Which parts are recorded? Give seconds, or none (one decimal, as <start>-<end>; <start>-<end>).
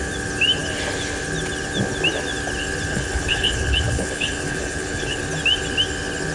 0.0-2.9; 5.2-6.3